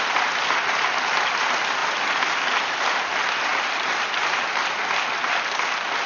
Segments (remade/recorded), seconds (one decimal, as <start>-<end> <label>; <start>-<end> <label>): 0.0-6.1 recorded